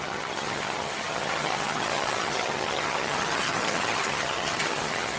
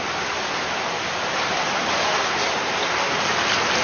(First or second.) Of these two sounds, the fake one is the first